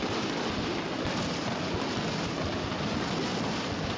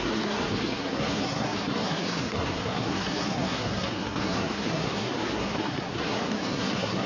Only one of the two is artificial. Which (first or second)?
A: second